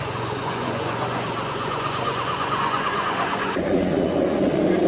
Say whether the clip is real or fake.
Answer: fake